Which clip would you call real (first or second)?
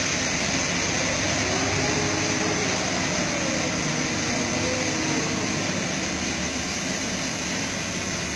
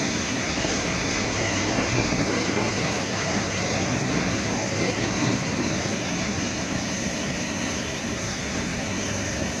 first